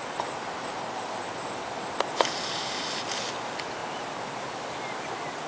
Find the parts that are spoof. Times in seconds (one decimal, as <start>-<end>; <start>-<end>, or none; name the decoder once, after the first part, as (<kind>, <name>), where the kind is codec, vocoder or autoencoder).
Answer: none